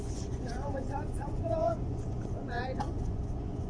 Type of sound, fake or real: fake